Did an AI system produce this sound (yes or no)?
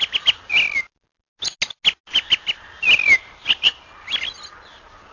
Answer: no